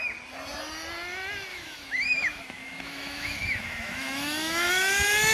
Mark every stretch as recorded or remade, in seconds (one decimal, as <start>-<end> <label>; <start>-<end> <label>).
0.0-1.5 recorded; 1.5-4.7 remade; 4.7-5.3 recorded